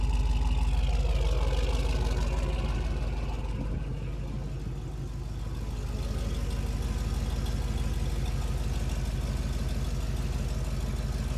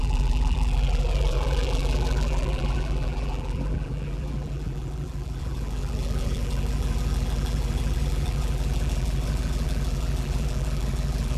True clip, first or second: first